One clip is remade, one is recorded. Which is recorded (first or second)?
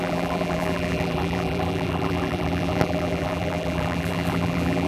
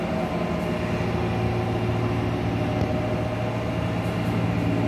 second